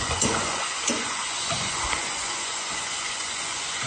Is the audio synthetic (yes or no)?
yes